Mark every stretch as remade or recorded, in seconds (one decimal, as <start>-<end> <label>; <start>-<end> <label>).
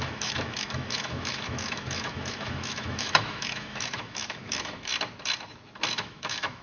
0.0-4.9 remade; 4.9-5.9 recorded; 5.9-6.6 remade